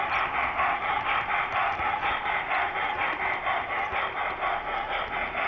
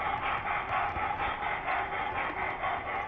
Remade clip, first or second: first